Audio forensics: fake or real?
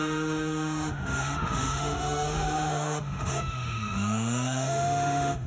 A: fake